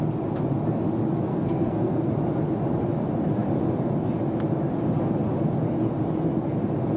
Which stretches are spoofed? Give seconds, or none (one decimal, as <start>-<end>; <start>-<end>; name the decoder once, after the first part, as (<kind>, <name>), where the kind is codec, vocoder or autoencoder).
1.3-2.1 (codec, SNAC)